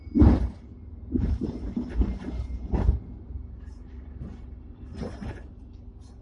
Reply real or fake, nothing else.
fake